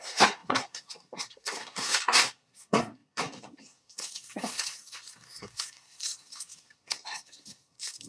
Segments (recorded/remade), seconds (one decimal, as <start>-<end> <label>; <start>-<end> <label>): 0.0-8.1 remade